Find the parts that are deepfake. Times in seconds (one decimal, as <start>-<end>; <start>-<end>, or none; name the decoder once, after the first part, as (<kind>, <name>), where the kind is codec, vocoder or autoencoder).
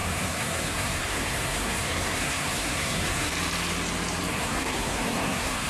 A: 0.0-3.3 (codec, SNAC); 4.3-5.7